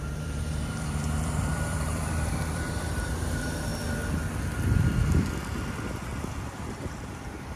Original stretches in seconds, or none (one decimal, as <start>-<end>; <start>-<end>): 3.7-6.4